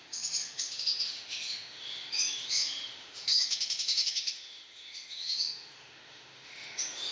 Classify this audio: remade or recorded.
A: remade